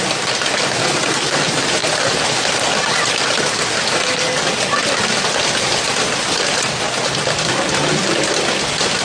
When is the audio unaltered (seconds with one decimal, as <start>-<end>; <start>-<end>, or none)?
0.0-9.0